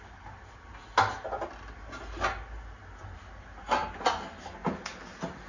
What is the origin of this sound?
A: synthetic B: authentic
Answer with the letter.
B